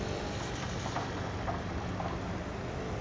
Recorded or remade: remade